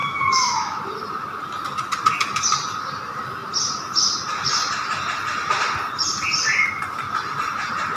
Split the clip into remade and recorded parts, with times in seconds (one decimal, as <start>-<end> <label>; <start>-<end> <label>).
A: 0.0-0.8 remade; 0.8-8.0 recorded